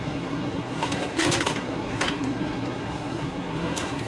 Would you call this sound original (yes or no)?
no